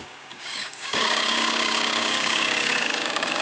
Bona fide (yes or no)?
no